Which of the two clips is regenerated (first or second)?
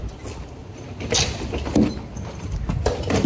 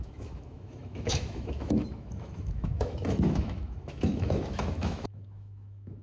second